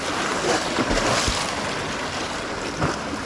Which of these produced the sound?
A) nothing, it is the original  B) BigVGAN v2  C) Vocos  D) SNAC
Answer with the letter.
A